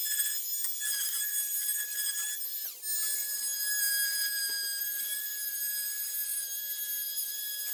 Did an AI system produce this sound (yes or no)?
no